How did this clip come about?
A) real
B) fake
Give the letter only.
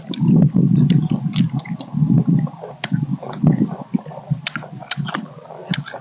A